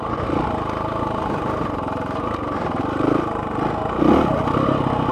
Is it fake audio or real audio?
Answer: real